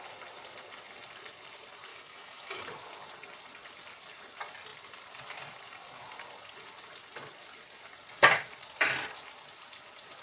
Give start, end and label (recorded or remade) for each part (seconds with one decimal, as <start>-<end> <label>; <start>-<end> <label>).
0.0-1.9 recorded; 1.9-2.6 remade; 2.6-10.2 recorded